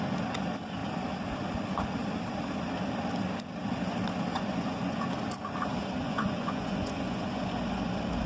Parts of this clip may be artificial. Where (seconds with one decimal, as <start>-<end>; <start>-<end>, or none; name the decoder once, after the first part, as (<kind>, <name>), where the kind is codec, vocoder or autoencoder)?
4.3-5.0 (vocoder, Vocos); 6.0-7.6